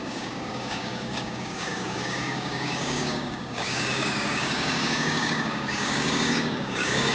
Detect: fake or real fake